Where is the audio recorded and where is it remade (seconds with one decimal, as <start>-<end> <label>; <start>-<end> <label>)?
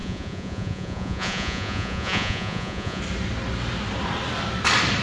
0.0-3.0 remade; 3.0-5.0 recorded